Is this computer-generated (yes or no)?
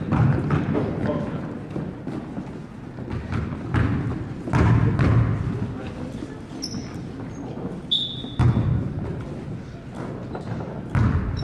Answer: no